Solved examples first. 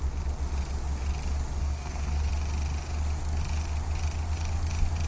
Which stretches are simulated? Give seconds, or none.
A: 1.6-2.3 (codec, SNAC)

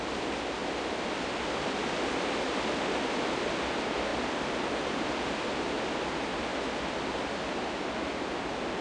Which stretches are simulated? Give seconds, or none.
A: 1.8-2.7 (vocoder, BigVGAN v2); 4.1-5.0

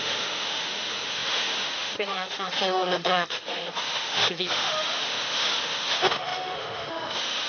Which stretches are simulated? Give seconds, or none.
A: 0.0-7.5 (autoencoder, DAC-VAE)

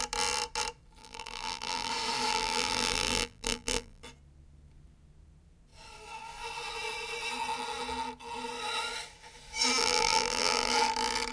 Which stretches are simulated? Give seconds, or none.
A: 1.0-1.9 (vocoder, BigVGAN v2); 2.3-4.0; 9.8-10.7

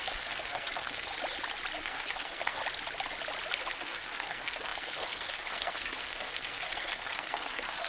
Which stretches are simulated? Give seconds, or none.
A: 0.0-1.1 (codec, SNAC); 1.8-2.6; 3.6-7.9

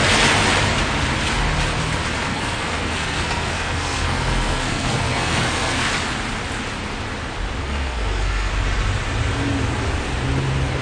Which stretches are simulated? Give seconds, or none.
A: 2.3-5.9 (codec, SNAC); 7.6-8.5

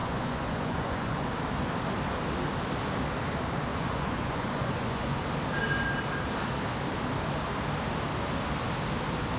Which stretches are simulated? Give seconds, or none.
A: 0.0-1.3 (vocoder, Vocos); 3.7-5.2